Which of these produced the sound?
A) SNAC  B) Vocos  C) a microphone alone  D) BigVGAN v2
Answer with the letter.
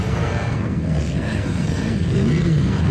A